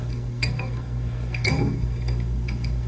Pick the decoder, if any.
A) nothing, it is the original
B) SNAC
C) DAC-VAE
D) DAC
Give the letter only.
B